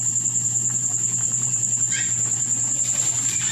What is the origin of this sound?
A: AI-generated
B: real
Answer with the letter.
A